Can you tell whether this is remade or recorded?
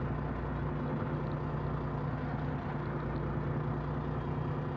recorded